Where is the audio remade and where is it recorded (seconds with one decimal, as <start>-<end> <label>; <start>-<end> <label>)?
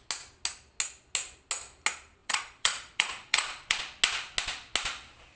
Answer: 0.0-2.2 recorded; 2.2-3.8 remade; 3.8-5.4 recorded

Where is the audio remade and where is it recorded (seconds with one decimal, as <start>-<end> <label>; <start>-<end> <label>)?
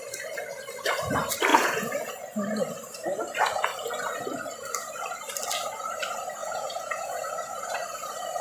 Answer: 0.0-1.5 recorded; 1.5-2.1 remade; 2.1-6.4 recorded; 6.4-7.3 remade; 7.3-8.4 recorded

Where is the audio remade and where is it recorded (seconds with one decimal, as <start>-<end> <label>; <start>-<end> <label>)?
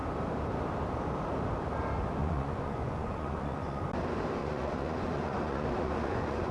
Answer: 0.0-2.2 recorded; 2.2-3.8 remade; 3.8-4.4 recorded; 4.4-6.5 remade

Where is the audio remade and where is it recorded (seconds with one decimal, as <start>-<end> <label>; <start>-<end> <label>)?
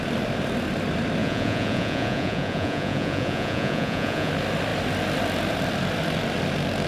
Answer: 0.0-1.2 recorded; 1.2-4.3 remade; 4.3-6.9 recorded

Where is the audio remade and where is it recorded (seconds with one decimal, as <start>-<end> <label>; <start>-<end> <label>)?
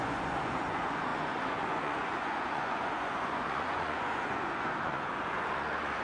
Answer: 0.0-6.0 remade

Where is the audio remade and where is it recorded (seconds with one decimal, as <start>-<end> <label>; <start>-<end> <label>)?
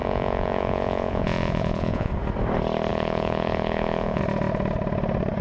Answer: 0.0-2.1 remade; 2.1-2.9 recorded; 2.9-4.2 remade; 4.2-5.4 recorded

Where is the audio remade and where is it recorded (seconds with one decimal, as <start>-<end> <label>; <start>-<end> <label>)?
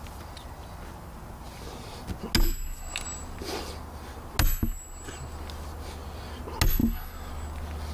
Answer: 0.0-7.9 recorded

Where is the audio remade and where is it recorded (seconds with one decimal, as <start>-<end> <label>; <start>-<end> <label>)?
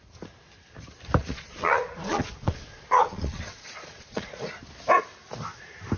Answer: 0.0-1.2 recorded; 1.2-4.5 remade; 4.5-6.0 recorded